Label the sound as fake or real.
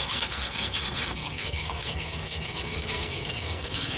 fake